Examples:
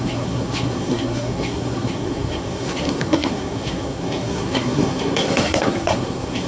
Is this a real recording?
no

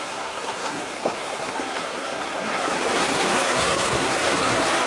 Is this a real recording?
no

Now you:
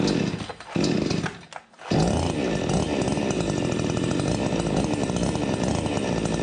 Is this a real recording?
yes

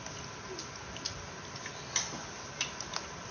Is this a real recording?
yes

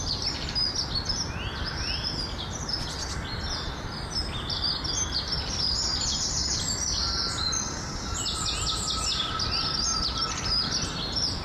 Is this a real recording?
yes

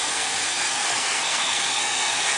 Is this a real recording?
no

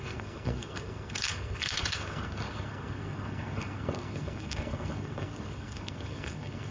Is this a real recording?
no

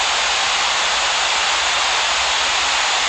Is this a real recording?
yes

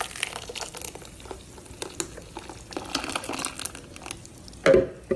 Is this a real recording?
yes